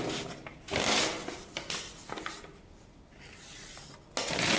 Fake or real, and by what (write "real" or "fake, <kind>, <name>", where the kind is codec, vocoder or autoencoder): real